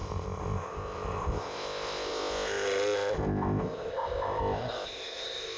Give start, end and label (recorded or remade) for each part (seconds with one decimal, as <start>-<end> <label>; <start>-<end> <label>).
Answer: 0.0-5.6 remade